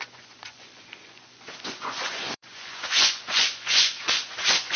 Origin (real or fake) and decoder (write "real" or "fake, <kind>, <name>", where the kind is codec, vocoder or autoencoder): fake, vocoder, Vocos